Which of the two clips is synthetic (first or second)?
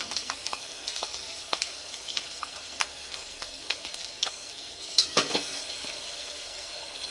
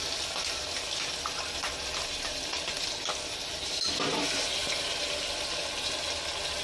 first